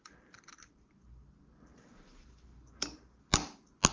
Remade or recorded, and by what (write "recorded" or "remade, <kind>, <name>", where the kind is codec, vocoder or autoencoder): recorded